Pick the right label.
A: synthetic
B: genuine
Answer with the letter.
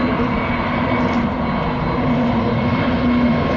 B